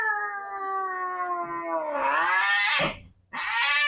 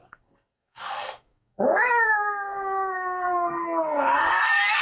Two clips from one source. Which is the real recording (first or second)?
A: first